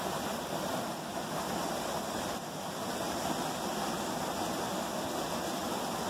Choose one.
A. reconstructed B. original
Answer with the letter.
B